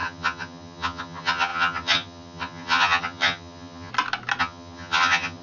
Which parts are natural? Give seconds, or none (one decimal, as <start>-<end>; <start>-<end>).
3.9-4.4